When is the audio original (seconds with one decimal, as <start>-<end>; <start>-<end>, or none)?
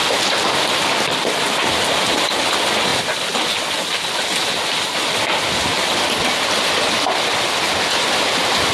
0.0-8.7